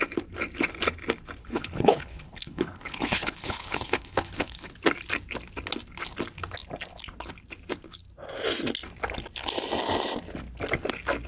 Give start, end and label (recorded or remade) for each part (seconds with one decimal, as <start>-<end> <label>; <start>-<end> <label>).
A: 0.0-1.4 recorded; 1.4-4.7 remade; 4.7-11.3 recorded